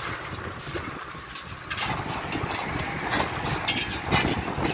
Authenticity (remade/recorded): recorded